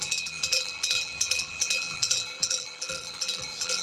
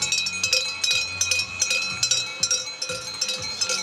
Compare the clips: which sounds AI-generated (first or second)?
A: first